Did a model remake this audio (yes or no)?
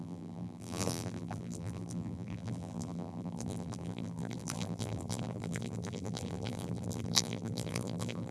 yes